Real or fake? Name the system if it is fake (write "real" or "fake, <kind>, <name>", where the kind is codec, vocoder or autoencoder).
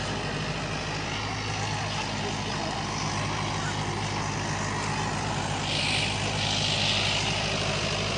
real